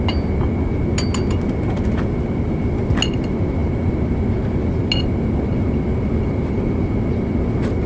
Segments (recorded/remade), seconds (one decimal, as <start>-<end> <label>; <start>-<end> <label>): 0.0-7.9 recorded